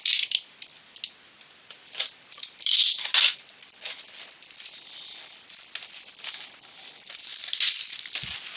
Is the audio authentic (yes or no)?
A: yes